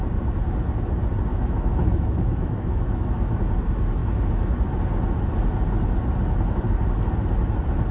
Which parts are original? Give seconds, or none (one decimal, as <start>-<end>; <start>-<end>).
0.0-1.3; 3.4-7.9